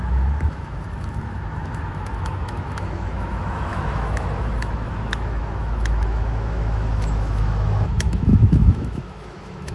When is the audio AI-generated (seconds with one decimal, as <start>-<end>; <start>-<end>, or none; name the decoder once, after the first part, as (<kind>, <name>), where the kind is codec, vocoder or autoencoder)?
0.0-9.7 (autoencoder, DAC-VAE)